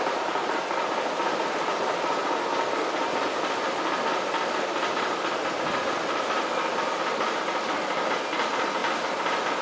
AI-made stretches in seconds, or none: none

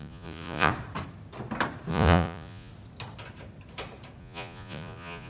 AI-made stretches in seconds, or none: 0.0-0.7 (vocoder, Vocos); 1.9-2.7; 4.2-5.3

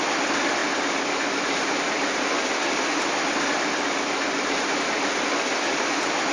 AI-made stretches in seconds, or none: none

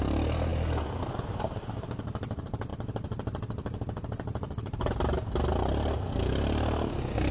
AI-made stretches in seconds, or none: none

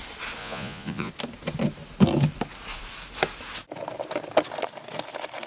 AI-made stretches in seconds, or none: 0.4-1.1 (vocoder, Vocos)

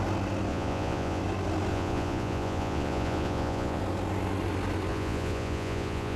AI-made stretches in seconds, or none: 0.5-1.2 (vocoder, Vocos); 1.7-3.8; 4.9-6.2

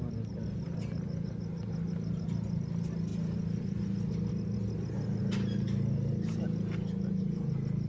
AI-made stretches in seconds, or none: none

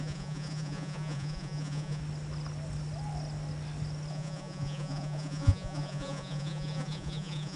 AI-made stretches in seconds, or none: 0.0-2.0 (vocoder, Vocos); 4.1-7.6